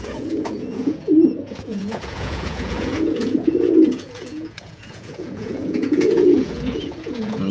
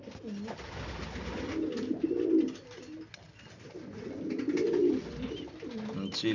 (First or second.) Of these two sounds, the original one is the second